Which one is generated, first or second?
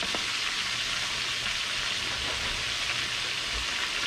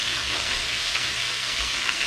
second